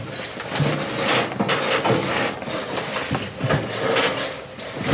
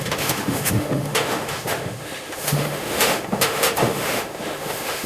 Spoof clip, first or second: second